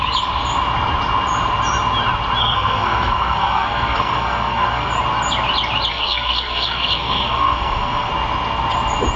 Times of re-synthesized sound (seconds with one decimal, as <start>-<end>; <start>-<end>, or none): 2.4-4.9; 5.9-8.1